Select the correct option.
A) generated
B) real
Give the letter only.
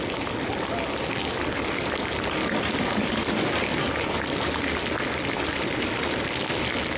B